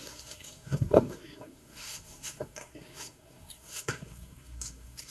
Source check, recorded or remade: remade